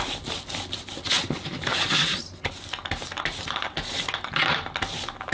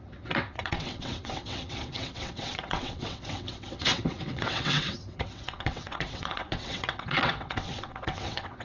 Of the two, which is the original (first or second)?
first